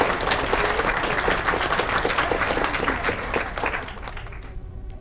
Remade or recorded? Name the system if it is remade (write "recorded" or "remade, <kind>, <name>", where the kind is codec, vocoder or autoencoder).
recorded